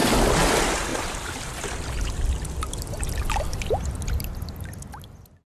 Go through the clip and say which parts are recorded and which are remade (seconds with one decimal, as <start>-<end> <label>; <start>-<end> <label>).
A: 0.0-5.5 recorded